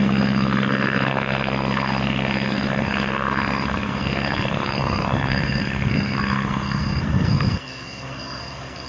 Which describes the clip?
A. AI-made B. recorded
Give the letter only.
A